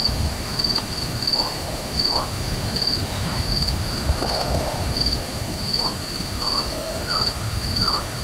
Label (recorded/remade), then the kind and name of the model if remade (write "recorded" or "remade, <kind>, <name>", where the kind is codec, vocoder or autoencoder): remade, autoencoder, DAC-VAE